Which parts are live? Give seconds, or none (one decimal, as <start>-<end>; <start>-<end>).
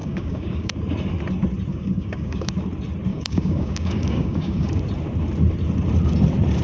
0.8-1.7; 2.5-3.1; 4.8-6.6